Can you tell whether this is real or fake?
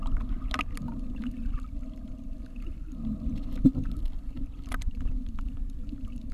fake